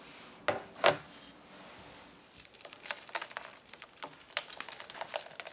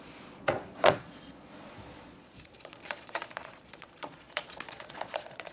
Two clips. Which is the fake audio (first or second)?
second